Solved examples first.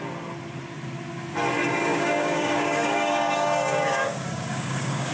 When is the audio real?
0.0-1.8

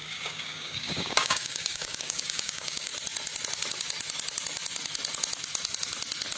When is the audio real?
2.9-6.4

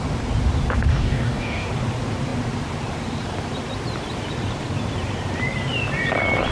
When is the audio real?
0.0-0.9; 1.7-6.5

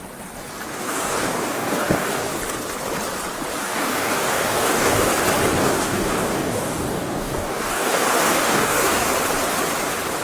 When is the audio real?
0.0-0.7; 2.4-3.6; 5.1-5.6; 9.1-10.2

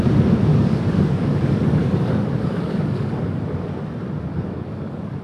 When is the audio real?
0.0-0.5; 3.4-4.3

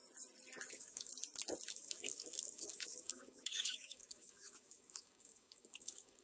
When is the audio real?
0.0-0.7; 1.1-1.7

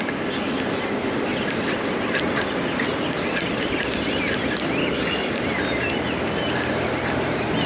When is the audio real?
0.0-4.8; 5.3-7.7